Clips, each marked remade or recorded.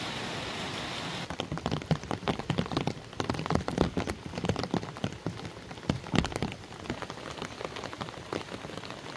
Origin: recorded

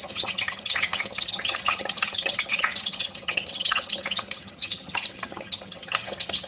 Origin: remade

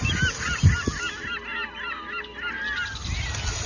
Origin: recorded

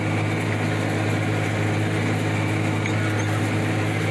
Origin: recorded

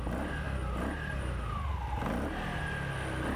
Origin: recorded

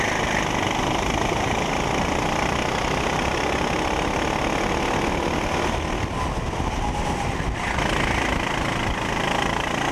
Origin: recorded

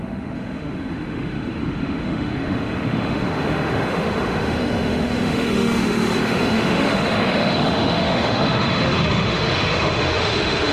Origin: remade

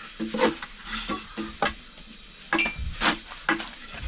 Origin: recorded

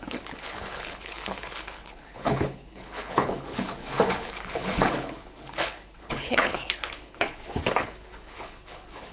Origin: remade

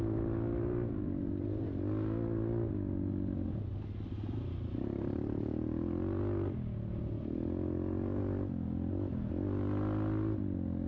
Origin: recorded